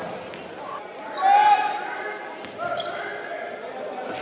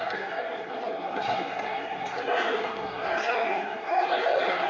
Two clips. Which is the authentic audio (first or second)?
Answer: first